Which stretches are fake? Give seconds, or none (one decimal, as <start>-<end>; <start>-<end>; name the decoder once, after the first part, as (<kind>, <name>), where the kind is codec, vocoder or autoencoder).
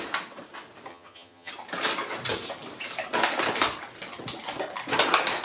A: 0.9-1.5 (vocoder, HiFi-GAN)